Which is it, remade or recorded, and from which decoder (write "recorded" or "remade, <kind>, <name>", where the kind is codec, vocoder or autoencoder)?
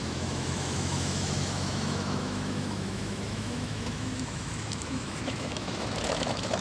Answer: remade, autoencoder, DAC-VAE